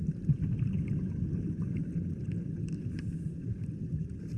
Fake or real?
real